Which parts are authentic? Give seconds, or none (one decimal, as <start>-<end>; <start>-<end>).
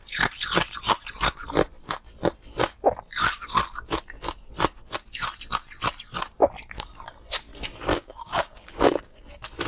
0.0-7.9; 9.2-9.7